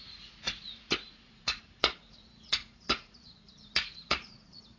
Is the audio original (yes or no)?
no